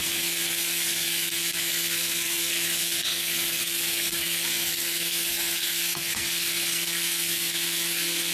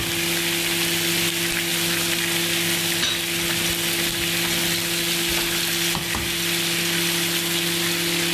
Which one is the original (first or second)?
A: second